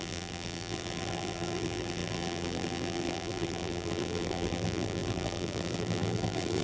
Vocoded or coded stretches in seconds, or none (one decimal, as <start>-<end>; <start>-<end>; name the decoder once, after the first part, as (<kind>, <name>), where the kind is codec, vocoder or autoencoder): 0.0-6.6 (vocoder, BigVGAN v2)